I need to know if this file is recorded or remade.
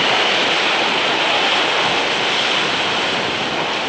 recorded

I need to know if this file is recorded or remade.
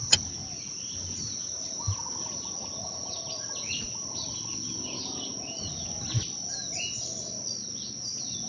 recorded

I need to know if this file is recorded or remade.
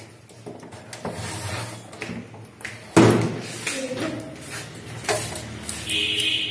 recorded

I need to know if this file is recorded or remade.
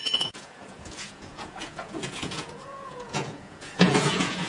remade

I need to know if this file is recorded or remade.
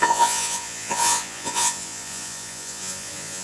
remade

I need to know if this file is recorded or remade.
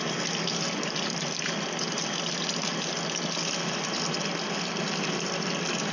recorded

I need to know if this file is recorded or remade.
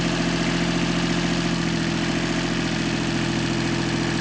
recorded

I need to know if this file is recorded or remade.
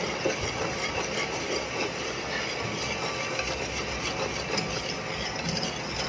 recorded